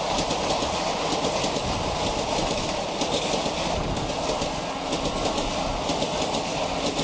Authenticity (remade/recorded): recorded